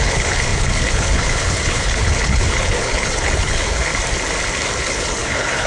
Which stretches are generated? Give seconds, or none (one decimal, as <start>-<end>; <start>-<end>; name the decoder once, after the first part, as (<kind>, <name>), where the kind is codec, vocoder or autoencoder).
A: 0.0-3.9 (codec, HILCodec); 4.8-5.7